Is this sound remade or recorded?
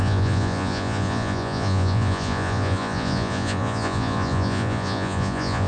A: remade